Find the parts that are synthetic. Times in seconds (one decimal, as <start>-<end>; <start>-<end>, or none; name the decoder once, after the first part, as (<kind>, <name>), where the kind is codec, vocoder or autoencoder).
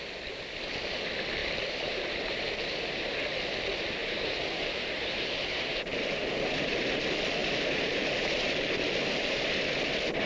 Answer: 1.4-2.4 (vocoder, BigVGAN v2); 4.0-6.3; 7.4-8.7